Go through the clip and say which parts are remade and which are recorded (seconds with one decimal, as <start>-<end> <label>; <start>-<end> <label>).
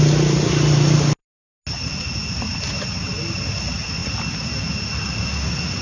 0.0-5.8 recorded